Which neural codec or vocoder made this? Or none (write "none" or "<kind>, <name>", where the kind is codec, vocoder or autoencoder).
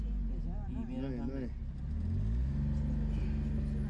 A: none